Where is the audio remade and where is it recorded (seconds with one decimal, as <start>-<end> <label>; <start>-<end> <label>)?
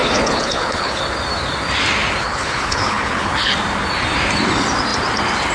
0.0-1.0 remade; 1.0-2.2 recorded; 2.2-3.5 remade; 3.5-5.5 recorded